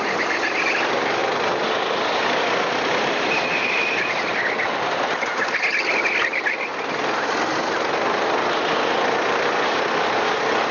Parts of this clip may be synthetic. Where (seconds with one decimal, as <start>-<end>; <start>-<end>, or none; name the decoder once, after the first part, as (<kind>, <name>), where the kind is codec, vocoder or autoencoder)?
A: none